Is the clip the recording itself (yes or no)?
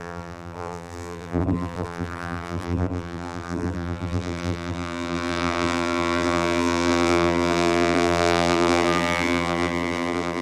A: no